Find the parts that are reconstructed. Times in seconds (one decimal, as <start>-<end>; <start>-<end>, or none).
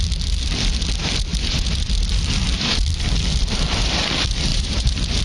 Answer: 4.5-5.2